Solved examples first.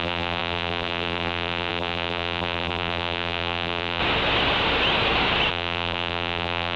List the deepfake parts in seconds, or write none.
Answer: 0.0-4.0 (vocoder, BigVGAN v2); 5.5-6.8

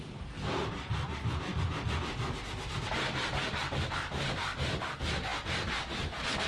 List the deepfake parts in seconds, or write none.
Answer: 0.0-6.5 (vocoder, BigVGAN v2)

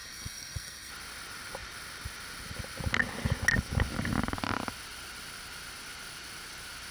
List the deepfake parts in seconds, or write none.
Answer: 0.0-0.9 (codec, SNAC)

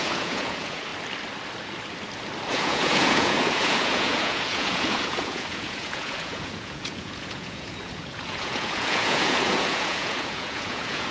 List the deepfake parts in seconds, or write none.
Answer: 0.0-0.9 (vocoder, Vocos); 2.5-11.1